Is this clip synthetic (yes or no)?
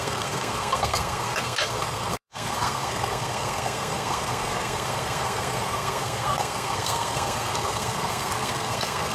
yes